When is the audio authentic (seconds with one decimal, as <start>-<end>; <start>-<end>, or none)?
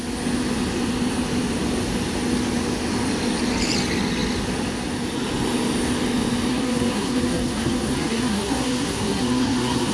0.0-6.5